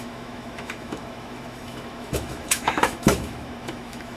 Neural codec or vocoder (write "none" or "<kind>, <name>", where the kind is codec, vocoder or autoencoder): autoencoder, DAC-VAE